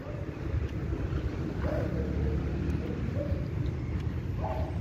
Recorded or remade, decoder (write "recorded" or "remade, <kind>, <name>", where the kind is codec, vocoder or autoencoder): recorded